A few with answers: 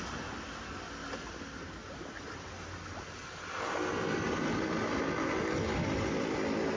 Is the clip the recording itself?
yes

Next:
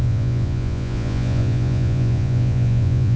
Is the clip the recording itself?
no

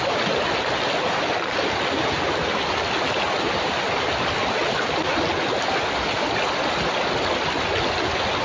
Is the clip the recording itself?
yes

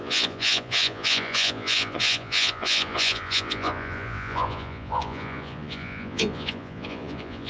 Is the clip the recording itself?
no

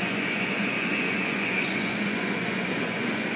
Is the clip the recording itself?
no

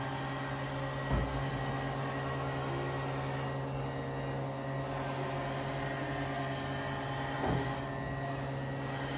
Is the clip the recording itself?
yes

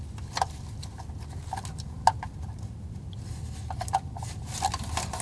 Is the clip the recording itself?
yes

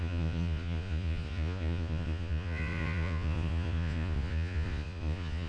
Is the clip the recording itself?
no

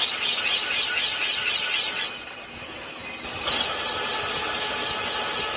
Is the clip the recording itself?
yes